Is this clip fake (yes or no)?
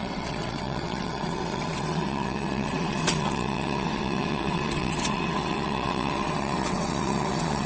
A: yes